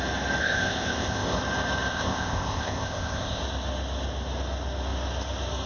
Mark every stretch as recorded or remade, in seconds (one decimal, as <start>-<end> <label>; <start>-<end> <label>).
0.0-0.4 recorded; 0.4-1.4 remade; 1.4-1.9 recorded; 1.9-3.4 remade; 3.4-5.7 recorded